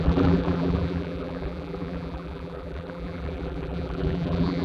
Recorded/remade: remade